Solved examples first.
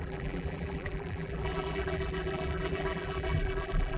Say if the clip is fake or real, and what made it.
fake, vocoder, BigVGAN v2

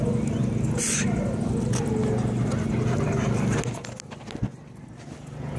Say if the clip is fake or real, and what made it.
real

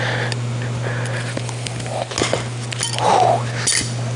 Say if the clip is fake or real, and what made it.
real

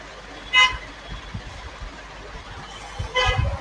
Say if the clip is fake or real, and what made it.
real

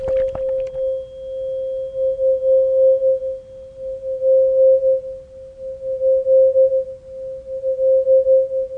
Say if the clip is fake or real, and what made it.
real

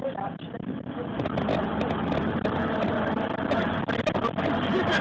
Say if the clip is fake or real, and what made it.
fake, vocoder, BigVGAN v2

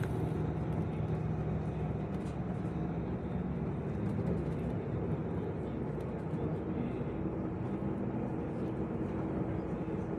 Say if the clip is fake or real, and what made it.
real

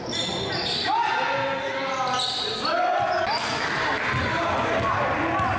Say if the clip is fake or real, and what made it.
real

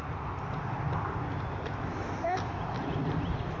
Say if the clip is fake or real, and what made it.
real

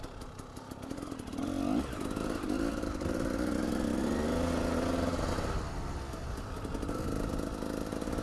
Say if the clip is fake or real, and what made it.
real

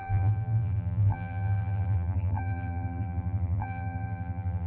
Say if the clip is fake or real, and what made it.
fake, vocoder, BigVGAN v2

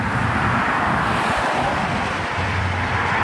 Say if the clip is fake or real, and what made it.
fake, vocoder, BigVGAN v2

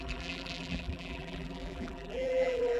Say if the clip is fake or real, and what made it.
fake, vocoder, BigVGAN v2